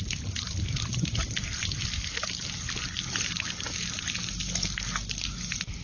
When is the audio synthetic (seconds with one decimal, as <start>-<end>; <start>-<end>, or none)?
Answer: none